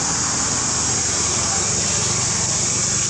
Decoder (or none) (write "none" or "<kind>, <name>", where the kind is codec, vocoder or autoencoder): none